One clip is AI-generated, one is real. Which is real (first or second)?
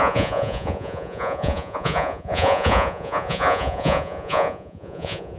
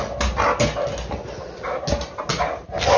second